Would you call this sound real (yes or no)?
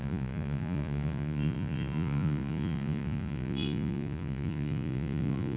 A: no